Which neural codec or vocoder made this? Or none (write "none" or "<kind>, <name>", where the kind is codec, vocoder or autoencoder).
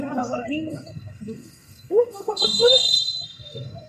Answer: codec, SNAC